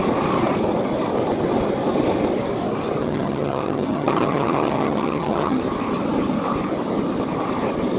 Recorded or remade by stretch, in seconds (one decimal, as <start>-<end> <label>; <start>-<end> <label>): 0.0-3.0 recorded; 3.0-5.6 remade; 5.6-8.0 recorded